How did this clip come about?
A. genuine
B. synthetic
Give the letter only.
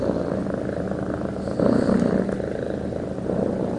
A